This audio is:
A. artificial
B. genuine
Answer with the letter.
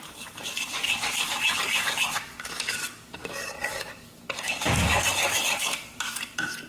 A